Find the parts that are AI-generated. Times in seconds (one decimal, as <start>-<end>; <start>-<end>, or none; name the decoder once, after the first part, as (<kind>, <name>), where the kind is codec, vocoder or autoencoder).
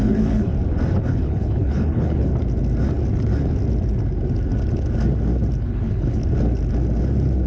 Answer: 0.0-0.5 (codec, HILCodec); 1.1-2.3; 5.6-6.2